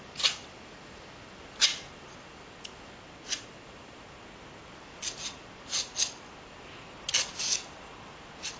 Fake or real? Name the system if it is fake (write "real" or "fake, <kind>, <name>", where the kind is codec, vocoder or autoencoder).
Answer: real